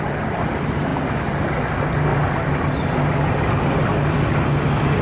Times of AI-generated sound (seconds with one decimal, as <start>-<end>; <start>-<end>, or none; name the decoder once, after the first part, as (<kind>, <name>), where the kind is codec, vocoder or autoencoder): none